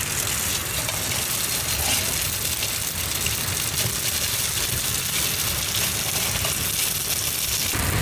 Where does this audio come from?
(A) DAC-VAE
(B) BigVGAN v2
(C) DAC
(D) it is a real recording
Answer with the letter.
D